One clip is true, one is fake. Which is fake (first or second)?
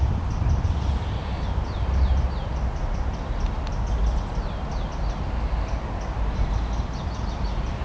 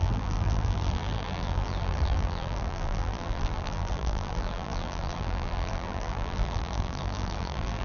second